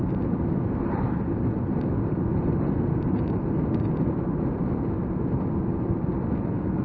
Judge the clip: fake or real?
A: real